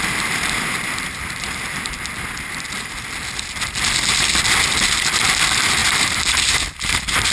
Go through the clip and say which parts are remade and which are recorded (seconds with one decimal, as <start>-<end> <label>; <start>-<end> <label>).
0.0-5.8 recorded; 5.8-6.5 remade; 6.5-7.3 recorded